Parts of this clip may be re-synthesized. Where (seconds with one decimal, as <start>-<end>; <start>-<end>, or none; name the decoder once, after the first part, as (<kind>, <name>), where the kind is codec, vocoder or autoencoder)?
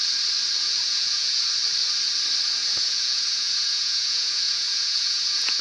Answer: 0.6-1.4 (vocoder, Vocos); 2.6-5.6